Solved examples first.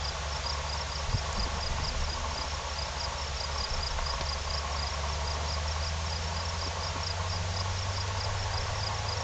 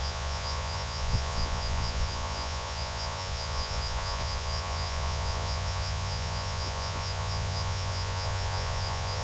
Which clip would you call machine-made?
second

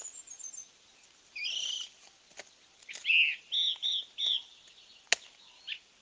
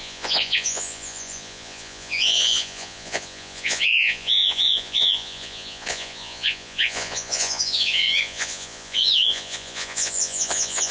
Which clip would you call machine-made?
second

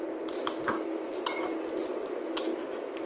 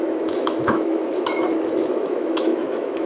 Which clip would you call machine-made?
second